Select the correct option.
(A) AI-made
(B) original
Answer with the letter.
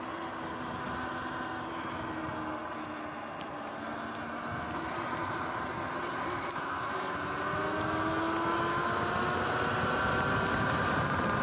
B